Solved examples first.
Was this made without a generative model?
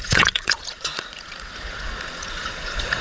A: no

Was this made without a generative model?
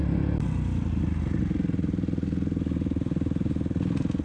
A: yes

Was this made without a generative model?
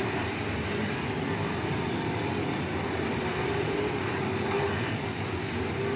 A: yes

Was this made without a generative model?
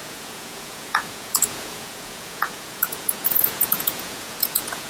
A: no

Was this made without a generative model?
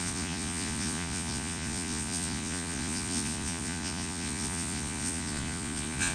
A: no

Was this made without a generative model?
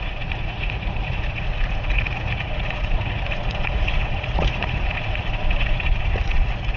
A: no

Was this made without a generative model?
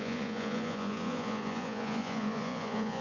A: no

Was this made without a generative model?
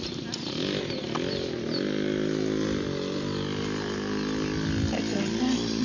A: yes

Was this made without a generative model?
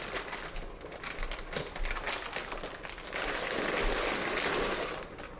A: yes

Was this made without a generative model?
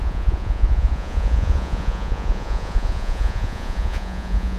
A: no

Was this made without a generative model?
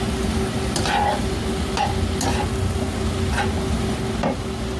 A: yes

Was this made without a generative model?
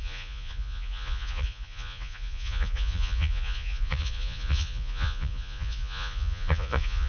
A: no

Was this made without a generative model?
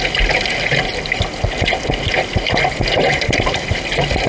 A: yes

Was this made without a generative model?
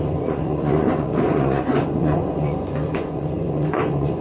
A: no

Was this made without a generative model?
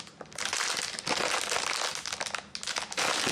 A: yes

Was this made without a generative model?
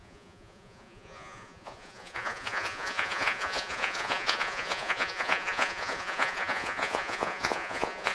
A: no